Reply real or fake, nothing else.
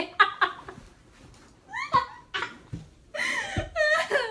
real